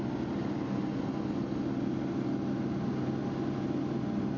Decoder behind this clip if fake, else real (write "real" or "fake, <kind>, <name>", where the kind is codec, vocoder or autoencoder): real